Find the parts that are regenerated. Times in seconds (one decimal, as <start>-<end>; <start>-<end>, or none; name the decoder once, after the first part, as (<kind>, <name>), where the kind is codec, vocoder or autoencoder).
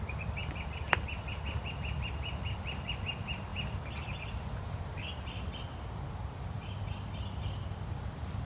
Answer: none